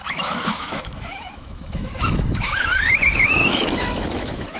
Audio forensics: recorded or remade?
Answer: remade